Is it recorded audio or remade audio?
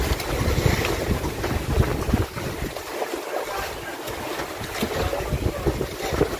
recorded